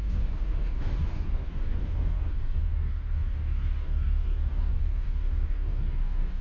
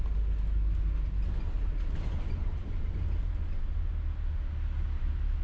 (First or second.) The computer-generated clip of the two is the first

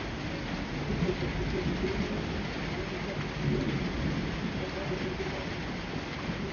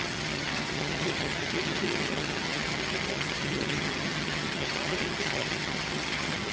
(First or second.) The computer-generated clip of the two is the second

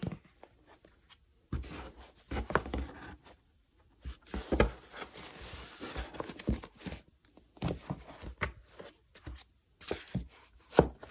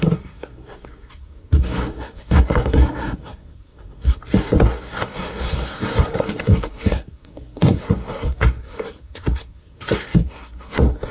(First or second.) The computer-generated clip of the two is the second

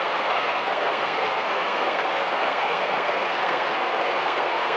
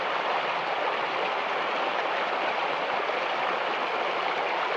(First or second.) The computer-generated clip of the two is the first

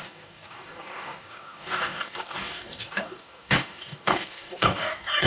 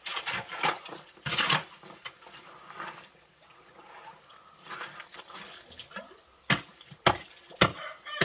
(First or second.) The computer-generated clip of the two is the first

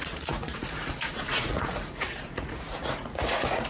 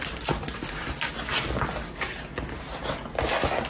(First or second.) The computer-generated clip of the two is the first